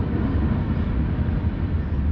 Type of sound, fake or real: real